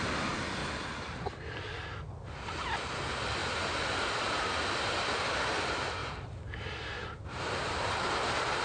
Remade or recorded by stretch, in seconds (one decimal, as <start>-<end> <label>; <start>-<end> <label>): 0.0-3.4 recorded; 3.4-4.7 remade; 4.7-6.0 recorded; 6.0-8.6 remade